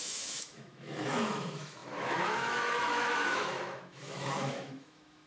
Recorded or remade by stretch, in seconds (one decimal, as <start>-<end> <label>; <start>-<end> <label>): 0.0-5.3 remade